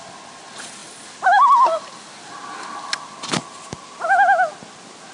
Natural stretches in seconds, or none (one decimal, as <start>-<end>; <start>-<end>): 0.0-5.1